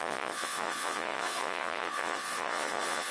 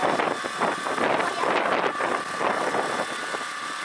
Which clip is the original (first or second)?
second